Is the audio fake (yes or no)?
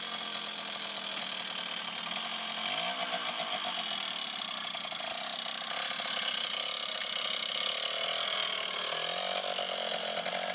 no